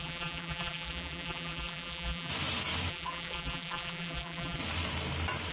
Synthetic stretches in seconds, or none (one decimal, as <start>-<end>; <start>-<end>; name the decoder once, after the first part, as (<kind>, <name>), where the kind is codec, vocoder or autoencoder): 0.0-2.3 (vocoder, BigVGAN v2); 2.9-4.6